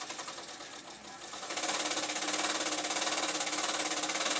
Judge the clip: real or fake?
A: real